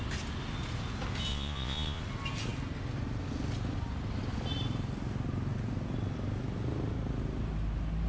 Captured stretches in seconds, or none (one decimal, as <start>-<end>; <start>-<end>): 0.0-1.3; 2.0-8.1